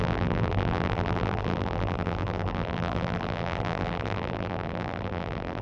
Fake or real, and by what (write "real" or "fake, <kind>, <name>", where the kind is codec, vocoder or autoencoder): fake, vocoder, BigVGAN v2